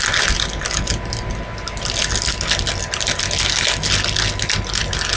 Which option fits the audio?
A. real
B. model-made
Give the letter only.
A